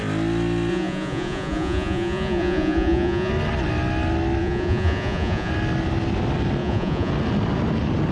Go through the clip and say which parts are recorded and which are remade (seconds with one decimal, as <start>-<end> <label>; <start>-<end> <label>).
0.0-0.7 recorded; 0.7-3.3 remade; 3.3-4.4 recorded; 4.4-5.5 remade; 5.5-6.6 recorded; 6.6-7.1 remade; 7.1-8.1 recorded